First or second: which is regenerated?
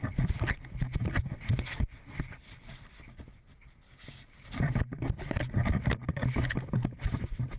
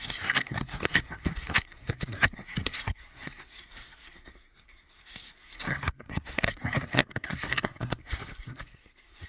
second